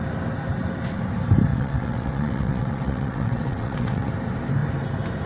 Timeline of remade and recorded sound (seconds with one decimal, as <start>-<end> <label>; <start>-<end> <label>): 0.0-1.5 recorded; 1.5-4.1 remade; 4.1-5.3 recorded